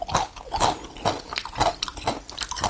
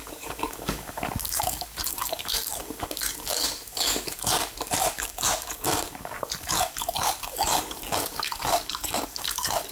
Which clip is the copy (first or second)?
second